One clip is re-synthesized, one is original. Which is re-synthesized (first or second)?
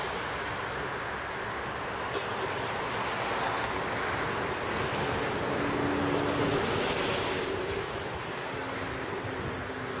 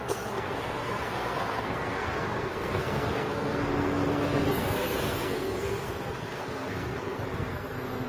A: second